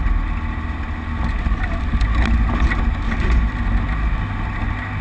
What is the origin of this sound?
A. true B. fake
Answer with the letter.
A